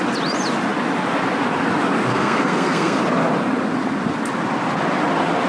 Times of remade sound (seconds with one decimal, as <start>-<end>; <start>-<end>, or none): 2.1-3.0